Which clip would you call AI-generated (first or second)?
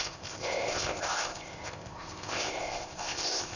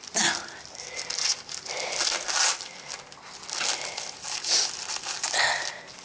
first